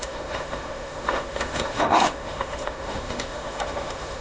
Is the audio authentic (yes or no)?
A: no